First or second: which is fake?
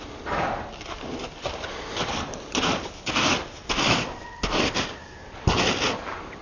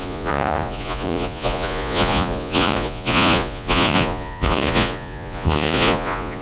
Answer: second